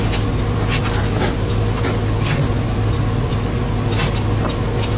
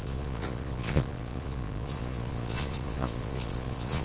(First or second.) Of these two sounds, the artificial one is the second